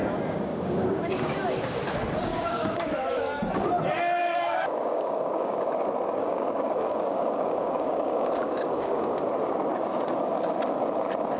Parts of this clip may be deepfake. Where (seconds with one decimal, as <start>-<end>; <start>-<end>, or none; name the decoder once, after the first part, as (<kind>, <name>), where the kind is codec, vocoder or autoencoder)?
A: 0.5-1.8 (codec, DAC); 2.3-3.4; 4.2-5.7; 6.2-9.2